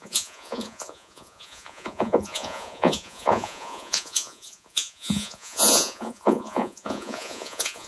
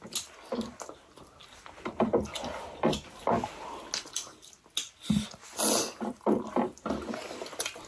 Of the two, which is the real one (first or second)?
second